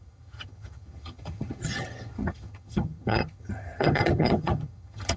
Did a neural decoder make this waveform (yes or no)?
yes